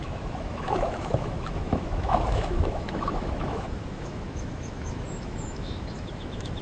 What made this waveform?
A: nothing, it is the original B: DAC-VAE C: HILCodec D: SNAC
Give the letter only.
B